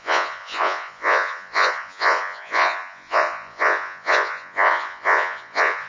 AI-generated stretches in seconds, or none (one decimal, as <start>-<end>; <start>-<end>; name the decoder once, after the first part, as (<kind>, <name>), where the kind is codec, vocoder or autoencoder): 0.0-5.9 (vocoder, Vocos)

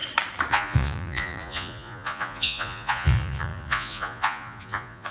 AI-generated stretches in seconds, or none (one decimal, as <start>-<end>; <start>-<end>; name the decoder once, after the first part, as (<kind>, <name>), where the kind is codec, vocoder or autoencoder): 0.5-5.1 (vocoder, Vocos)